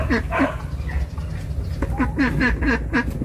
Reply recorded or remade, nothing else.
recorded